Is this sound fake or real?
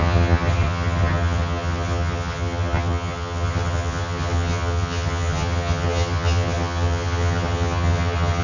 fake